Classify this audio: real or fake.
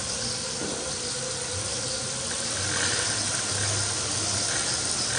real